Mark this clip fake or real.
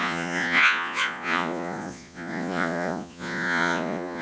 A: fake